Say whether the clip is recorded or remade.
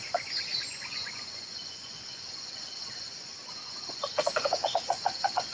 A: remade